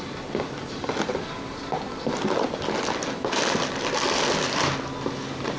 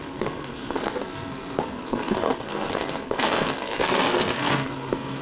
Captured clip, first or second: first